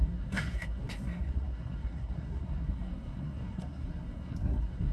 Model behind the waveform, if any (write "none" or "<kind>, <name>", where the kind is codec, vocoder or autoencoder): codec, SNAC